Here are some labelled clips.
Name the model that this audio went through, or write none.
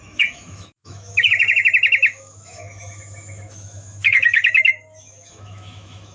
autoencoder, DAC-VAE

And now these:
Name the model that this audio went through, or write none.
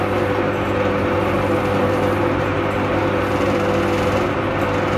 none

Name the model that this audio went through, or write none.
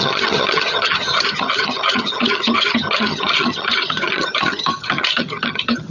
vocoder, HiFi-GAN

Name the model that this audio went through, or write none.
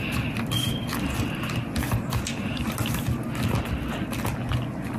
none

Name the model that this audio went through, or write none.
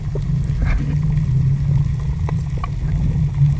none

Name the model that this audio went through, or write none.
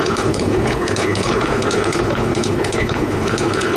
codec, HILCodec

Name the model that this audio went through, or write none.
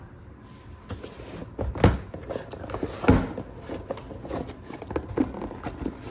none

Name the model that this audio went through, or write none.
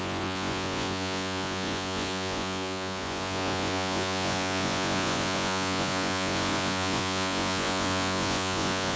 vocoder, Vocos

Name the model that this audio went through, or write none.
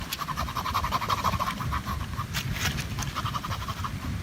none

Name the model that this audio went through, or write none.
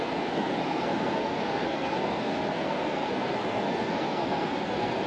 codec, SNAC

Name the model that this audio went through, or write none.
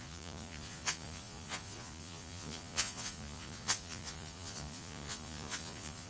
vocoder, Vocos